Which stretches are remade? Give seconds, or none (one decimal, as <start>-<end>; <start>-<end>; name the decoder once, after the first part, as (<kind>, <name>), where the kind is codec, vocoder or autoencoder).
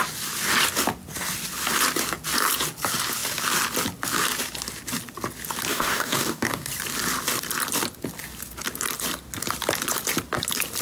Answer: 5.7-6.7 (codec, DAC)